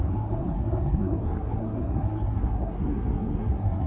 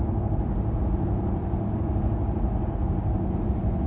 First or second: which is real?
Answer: second